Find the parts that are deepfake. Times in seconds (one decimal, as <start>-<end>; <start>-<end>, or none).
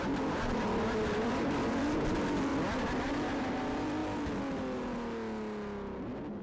0.0-2.5; 3.0-4.0